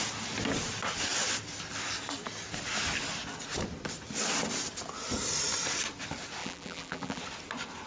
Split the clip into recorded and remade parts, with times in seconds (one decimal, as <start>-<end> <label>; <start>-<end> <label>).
0.0-6.4 recorded; 6.4-7.2 remade; 7.2-7.9 recorded